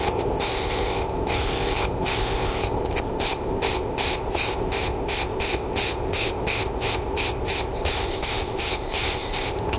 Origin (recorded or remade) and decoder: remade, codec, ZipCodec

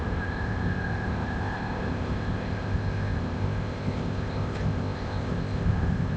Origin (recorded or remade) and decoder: remade, codec, ZipCodec